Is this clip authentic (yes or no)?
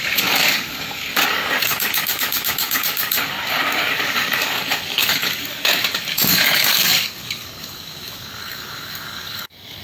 no